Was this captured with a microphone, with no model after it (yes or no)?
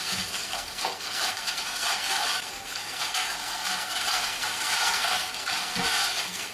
no